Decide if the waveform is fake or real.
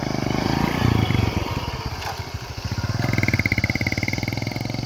real